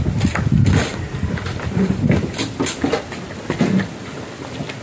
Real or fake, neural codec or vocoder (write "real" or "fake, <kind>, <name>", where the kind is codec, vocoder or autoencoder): real